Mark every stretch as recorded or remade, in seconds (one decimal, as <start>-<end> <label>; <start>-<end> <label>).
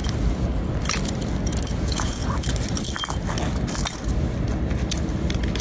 0.0-1.7 recorded; 1.7-2.2 remade; 2.2-5.6 recorded